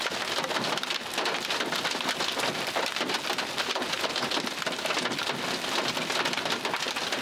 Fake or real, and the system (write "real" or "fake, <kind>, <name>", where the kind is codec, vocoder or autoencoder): real